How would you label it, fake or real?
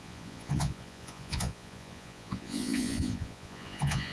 fake